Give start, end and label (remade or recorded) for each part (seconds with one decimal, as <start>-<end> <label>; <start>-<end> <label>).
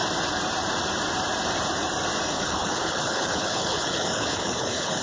0.0-2.3 recorded; 2.3-5.0 remade